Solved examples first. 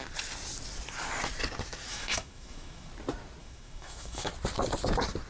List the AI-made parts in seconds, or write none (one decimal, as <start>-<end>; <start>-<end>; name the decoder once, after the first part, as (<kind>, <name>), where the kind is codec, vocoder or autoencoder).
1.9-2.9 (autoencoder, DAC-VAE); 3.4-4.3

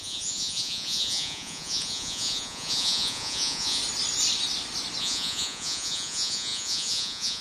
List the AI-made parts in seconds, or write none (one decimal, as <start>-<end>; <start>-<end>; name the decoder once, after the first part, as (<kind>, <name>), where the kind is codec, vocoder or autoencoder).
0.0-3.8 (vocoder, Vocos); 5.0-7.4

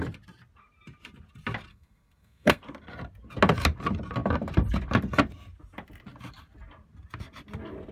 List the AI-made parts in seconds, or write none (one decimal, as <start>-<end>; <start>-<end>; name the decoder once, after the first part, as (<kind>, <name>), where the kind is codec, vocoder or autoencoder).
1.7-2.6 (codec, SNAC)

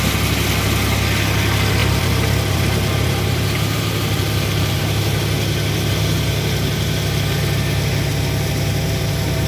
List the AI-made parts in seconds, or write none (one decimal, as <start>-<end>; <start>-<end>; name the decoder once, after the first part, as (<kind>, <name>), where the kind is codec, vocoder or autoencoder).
1.8-4.8 (vocoder, BigVGAN v2)

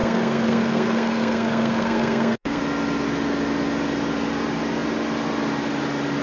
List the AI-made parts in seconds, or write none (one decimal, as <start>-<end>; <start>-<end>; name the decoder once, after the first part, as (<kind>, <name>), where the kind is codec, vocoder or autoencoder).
0.0-2.6 (codec, SNAC)

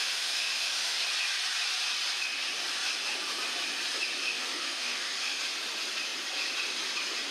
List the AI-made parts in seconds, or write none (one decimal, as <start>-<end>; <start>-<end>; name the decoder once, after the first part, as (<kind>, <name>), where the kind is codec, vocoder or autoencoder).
0.0-1.0 (autoencoder, DAC-VAE); 4.2-5.4